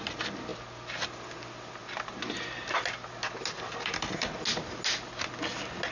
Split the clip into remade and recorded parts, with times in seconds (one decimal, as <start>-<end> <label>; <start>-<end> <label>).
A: 0.0-5.9 recorded